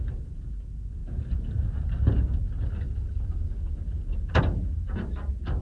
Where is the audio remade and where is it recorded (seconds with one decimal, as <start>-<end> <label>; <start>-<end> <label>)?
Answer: 0.0-5.6 recorded